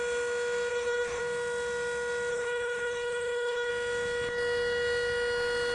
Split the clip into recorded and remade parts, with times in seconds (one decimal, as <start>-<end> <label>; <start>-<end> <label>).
0.0-0.7 recorded; 0.7-1.2 remade; 1.2-2.3 recorded; 2.3-3.7 remade; 3.7-5.7 recorded